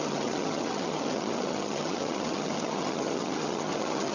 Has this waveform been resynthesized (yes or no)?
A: yes